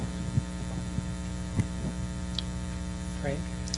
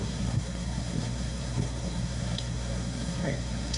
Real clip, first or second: first